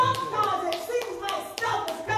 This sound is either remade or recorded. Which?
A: recorded